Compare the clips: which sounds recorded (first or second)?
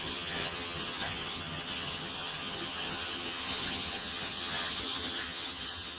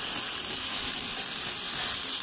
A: second